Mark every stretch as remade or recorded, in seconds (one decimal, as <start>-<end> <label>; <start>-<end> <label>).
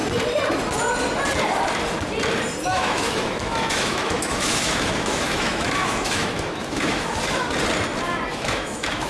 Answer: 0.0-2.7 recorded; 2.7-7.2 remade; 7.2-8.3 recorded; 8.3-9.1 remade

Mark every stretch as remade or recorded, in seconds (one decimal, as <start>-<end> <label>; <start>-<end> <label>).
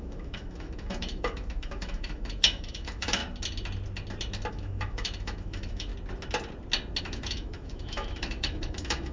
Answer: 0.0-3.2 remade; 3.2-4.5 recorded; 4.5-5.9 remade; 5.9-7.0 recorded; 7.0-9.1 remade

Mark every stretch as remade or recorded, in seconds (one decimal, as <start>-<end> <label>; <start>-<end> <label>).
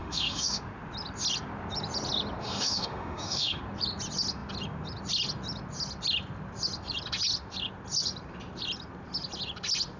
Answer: 0.0-0.6 remade; 0.6-2.4 recorded; 2.4-3.6 remade; 3.6-10.0 recorded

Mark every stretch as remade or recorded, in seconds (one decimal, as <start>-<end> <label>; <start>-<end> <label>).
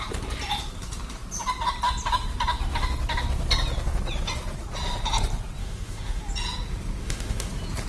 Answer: 0.0-5.6 recorded; 5.6-6.2 remade; 6.2-7.0 recorded; 7.0-7.5 remade; 7.5-7.9 recorded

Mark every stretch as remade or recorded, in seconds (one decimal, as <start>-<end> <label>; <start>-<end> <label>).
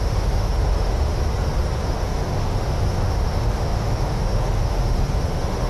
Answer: 0.0-1.1 remade; 1.1-1.7 recorded; 1.7-5.7 remade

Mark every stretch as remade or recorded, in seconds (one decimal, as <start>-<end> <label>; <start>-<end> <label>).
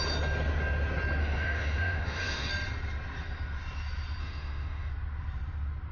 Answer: 0.0-1.2 recorded; 1.2-2.5 remade; 2.5-4.2 recorded; 4.2-4.9 remade; 4.9-5.9 recorded